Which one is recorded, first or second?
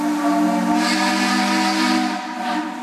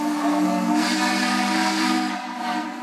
first